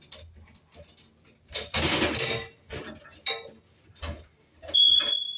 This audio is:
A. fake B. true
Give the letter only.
B